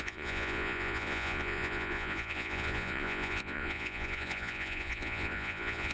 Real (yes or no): no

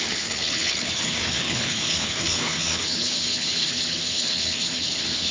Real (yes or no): no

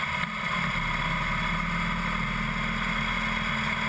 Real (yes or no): yes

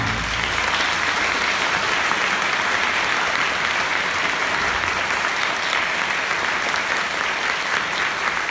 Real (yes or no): yes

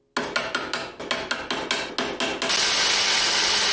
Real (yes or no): yes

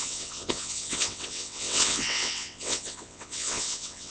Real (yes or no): no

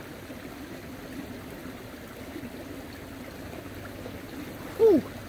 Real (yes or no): yes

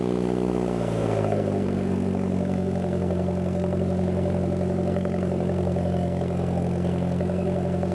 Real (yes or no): no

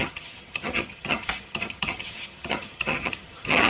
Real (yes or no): no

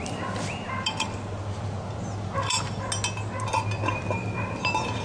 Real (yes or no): yes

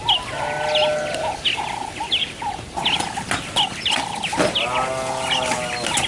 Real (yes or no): yes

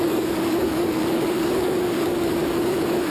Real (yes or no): no